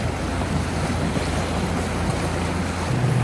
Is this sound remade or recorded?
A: recorded